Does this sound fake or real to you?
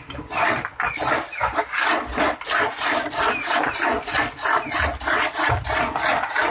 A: real